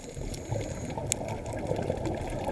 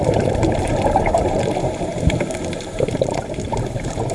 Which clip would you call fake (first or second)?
second